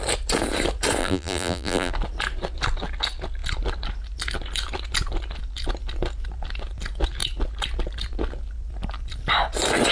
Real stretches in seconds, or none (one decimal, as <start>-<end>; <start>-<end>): 0.0-1.0; 1.9-9.9